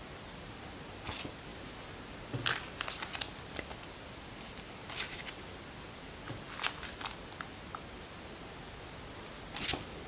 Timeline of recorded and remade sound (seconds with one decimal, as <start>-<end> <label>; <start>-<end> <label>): 0.0-10.1 recorded